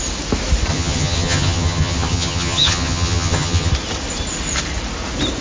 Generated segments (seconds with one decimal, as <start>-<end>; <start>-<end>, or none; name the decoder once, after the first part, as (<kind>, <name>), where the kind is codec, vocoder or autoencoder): 0.7-3.7 (vocoder, HiFi-GAN)